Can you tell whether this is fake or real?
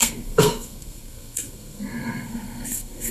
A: fake